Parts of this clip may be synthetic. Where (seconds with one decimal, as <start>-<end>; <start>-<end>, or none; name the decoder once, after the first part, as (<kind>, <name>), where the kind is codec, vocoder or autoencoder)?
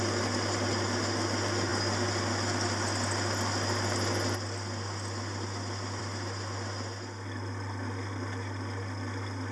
none